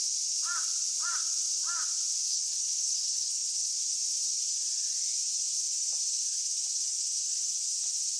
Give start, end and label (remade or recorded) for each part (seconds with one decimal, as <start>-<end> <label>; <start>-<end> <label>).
0.0-2.3 recorded; 2.3-3.7 remade; 3.7-8.2 recorded